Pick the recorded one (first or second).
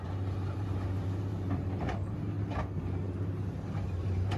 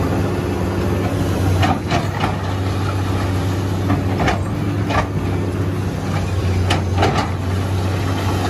second